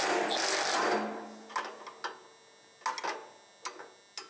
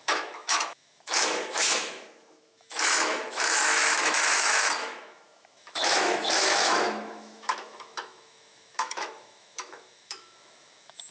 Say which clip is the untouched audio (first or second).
first